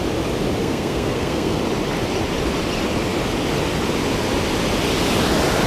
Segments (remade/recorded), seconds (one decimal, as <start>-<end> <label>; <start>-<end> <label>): 0.0-0.6 recorded; 0.6-1.6 remade; 1.6-5.7 recorded